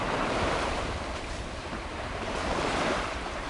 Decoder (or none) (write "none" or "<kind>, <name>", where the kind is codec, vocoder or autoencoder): vocoder, BigVGAN v2